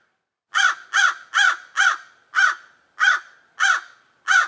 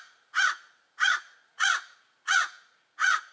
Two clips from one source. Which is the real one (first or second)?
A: first